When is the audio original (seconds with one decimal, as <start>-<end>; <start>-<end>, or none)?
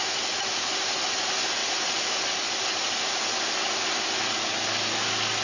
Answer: 0.0-5.4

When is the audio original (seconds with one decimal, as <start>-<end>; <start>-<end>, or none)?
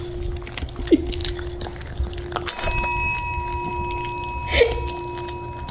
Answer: 0.0-5.7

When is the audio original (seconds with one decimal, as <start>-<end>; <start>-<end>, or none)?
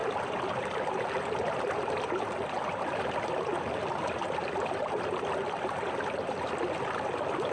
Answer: 0.0-7.5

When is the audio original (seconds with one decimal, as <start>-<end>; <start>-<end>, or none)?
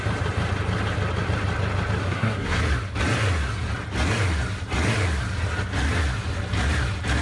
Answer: 0.0-2.0; 2.6-7.2